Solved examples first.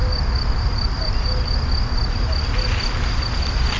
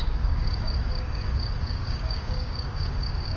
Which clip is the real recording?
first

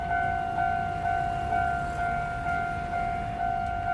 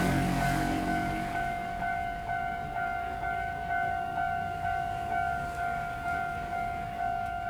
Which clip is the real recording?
first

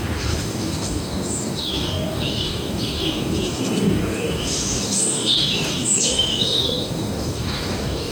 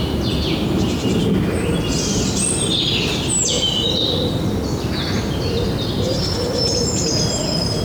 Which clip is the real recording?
second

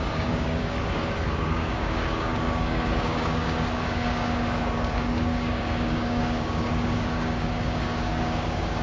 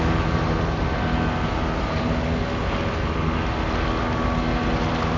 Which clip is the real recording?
second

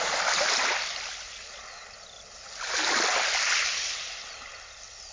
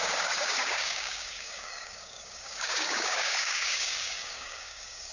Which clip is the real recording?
first